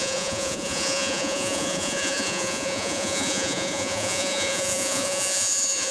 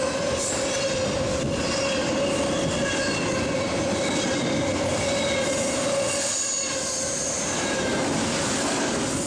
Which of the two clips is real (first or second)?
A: second